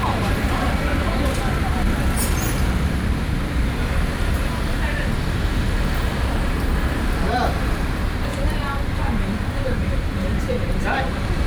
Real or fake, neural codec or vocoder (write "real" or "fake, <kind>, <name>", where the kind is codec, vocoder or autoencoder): fake, vocoder, BigVGAN v2